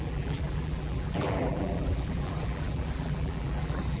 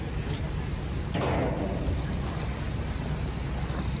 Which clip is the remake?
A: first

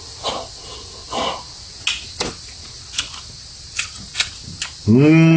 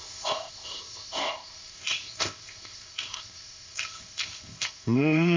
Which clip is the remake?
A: second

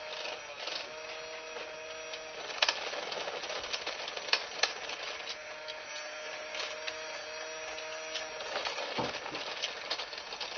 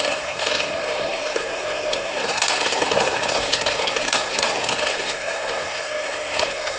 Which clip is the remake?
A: second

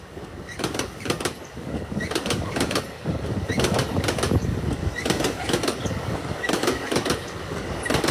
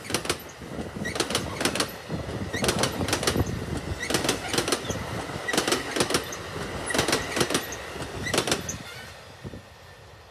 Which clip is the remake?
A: first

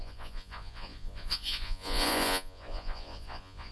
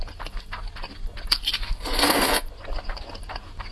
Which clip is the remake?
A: first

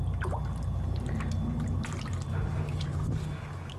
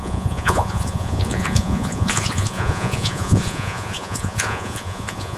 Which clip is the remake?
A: second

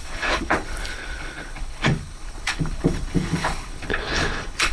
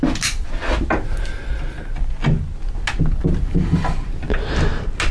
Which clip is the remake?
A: first